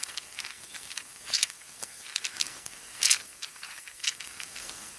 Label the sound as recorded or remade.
remade